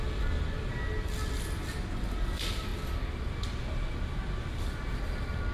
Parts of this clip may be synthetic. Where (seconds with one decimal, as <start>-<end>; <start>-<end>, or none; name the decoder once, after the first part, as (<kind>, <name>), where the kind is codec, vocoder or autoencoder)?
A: none